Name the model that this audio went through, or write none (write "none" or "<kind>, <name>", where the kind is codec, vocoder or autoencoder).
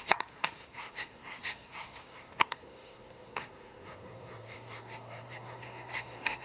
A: codec, SNAC